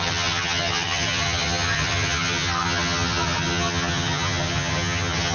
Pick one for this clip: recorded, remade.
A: remade